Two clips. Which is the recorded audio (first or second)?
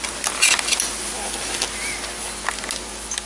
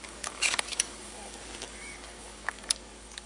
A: first